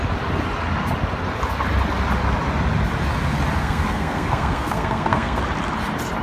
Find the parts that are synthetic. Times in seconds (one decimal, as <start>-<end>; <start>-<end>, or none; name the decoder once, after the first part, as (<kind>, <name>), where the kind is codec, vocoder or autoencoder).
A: 3.6-5.4 (codec, SNAC)